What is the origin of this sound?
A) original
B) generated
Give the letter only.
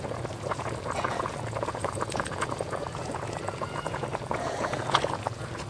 B